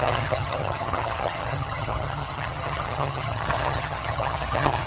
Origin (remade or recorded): remade